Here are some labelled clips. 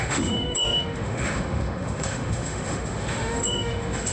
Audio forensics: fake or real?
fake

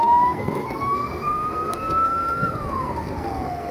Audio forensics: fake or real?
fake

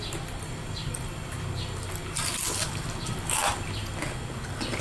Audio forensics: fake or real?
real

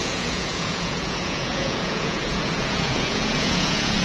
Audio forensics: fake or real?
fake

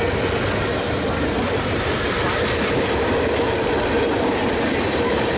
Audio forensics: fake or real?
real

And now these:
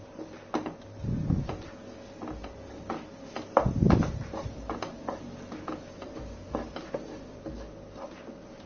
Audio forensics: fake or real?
real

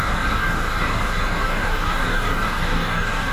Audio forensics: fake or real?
fake